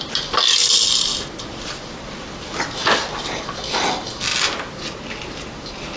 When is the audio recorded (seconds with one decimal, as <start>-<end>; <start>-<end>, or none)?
1.1-1.8; 4.3-5.2